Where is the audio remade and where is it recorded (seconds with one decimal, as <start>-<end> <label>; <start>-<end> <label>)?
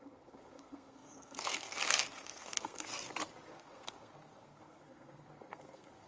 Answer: 0.0-2.9 remade; 2.9-3.5 recorded; 3.5-6.1 remade